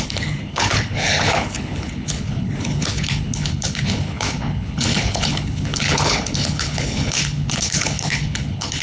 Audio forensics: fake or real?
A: fake